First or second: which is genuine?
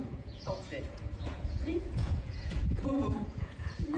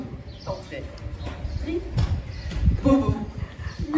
second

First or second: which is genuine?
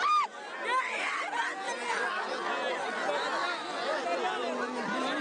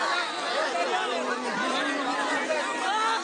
first